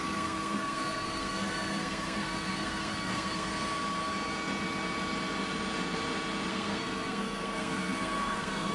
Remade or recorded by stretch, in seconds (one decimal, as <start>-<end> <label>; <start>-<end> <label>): 0.0-3.5 remade; 3.5-6.5 recorded; 6.5-8.7 remade